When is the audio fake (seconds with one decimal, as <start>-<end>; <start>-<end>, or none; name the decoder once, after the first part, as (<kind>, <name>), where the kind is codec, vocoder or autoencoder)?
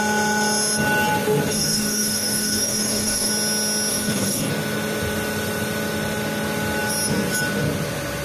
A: 1.5-3.3 (codec, DAC); 3.9-4.5